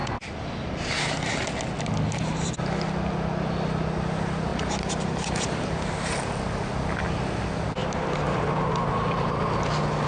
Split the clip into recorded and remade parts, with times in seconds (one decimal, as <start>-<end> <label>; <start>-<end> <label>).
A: 0.0-7.8 recorded; 7.8-8.7 remade; 8.7-10.1 recorded